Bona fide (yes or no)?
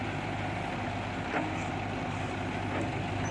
yes